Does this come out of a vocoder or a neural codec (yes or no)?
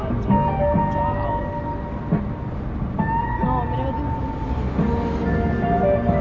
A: no